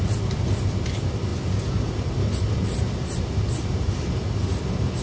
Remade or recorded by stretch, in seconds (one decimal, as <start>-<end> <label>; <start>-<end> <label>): 0.0-5.0 recorded